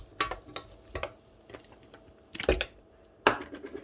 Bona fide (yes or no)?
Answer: yes